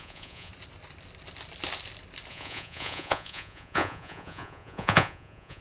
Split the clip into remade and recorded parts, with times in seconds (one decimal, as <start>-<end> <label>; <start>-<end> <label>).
0.0-0.5 remade; 0.5-2.3 recorded; 2.3-5.6 remade